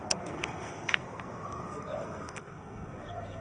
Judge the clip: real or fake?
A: fake